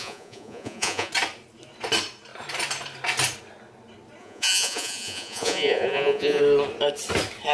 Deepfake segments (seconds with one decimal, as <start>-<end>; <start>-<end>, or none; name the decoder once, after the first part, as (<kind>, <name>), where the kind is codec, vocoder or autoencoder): 0.0-1.1 (vocoder, Vocos); 4.2-6.4